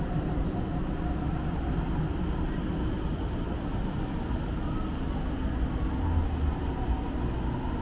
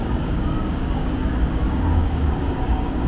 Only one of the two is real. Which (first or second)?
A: first